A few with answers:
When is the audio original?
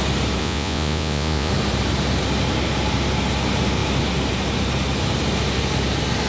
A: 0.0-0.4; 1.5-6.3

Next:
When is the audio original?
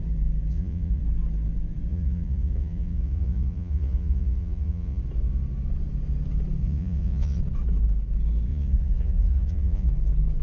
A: 0.0-0.5; 1.0-1.9; 5.0-6.6; 7.4-8.5; 9.9-10.4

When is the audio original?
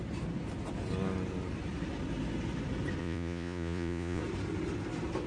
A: 0.0-3.0; 4.2-5.3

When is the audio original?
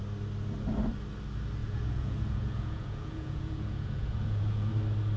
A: 0.0-1.6; 4.7-5.2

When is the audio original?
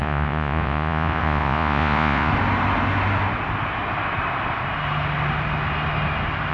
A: 2.3-6.5